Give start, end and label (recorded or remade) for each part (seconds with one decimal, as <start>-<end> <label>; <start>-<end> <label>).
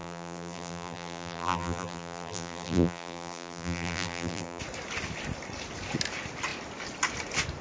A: 0.0-4.6 remade; 4.6-7.6 recorded